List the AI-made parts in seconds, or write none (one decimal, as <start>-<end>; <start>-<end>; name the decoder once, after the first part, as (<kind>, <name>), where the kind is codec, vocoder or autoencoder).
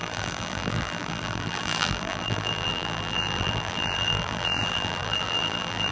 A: 0.0-5.9 (vocoder, BigVGAN v2)